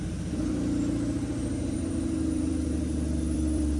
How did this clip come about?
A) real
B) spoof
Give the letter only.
B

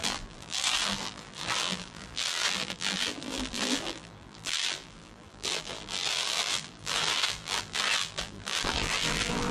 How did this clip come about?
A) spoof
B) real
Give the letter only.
A